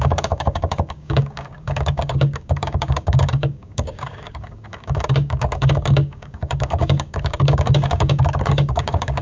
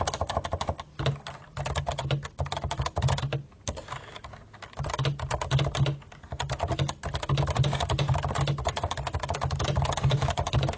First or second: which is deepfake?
first